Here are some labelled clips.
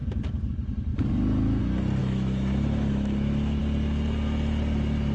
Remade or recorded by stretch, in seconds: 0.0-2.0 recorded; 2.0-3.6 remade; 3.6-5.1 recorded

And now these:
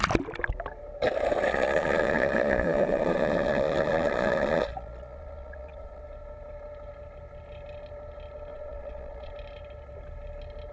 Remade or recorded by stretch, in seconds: 0.0-1.5 recorded; 1.5-6.0 remade; 6.0-8.5 recorded; 8.5-9.3 remade; 9.3-10.7 recorded

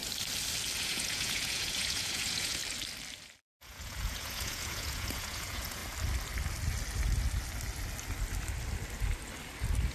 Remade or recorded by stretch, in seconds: 0.0-0.8 recorded; 0.8-2.6 remade; 2.6-3.5 recorded; 3.5-5.8 remade; 5.8-9.9 recorded

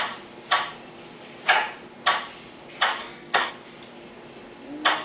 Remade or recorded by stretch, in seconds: 0.0-3.0 recorded; 3.0-3.5 remade; 3.5-5.0 recorded